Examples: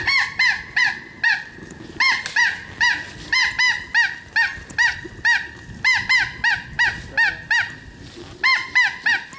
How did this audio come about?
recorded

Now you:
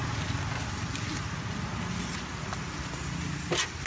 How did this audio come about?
recorded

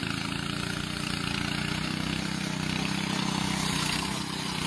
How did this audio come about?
recorded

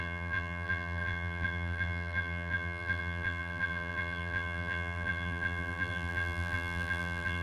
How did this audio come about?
remade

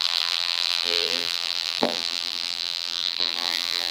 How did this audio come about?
remade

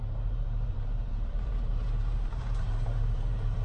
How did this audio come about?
remade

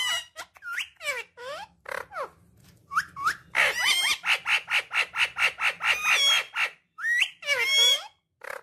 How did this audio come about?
recorded